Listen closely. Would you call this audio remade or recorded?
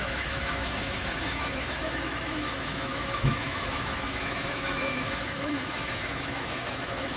remade